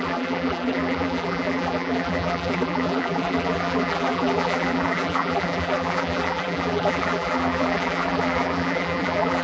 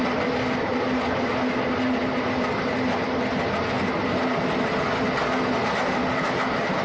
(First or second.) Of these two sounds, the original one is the second